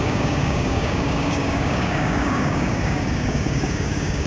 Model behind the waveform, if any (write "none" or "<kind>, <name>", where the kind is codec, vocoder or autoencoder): codec, DAC